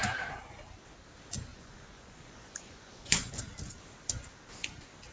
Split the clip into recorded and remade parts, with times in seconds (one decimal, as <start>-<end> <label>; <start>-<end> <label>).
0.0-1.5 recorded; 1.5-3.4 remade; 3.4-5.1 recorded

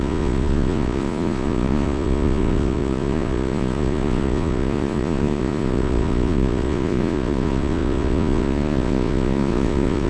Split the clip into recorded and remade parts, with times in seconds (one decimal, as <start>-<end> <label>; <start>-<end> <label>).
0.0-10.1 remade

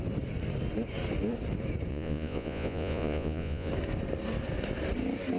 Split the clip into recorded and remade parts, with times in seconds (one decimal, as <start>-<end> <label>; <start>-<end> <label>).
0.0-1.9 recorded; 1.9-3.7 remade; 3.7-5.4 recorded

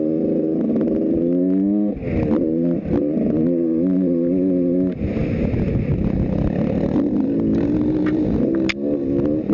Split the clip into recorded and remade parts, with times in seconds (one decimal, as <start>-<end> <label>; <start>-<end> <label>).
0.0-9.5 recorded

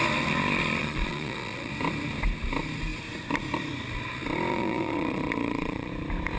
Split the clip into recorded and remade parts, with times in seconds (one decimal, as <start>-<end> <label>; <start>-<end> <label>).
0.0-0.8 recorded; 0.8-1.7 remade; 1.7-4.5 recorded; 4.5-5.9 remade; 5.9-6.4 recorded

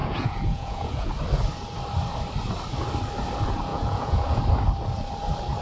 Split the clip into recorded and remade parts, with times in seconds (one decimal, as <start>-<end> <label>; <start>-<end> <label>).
0.0-1.1 remade; 1.1-3.7 recorded; 3.7-4.4 remade; 4.4-5.6 recorded

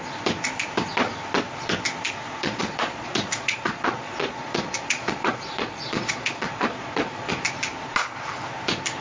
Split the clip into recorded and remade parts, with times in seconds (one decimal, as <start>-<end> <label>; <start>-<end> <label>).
0.0-2.4 recorded; 2.4-7.3 remade; 7.3-9.0 recorded

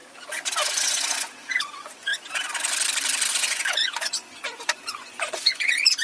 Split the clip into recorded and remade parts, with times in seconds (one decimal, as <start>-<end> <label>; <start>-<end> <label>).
0.0-0.7 recorded; 0.7-2.1 remade; 2.1-3.3 recorded; 3.3-6.0 remade